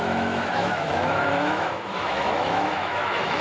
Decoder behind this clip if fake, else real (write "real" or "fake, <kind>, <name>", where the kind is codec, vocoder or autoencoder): fake, autoencoder, DAC-VAE